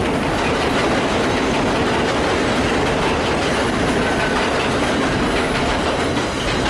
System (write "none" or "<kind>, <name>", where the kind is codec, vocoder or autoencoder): none